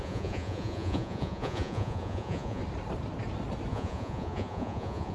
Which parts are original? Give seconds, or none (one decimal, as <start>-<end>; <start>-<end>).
2.6-3.7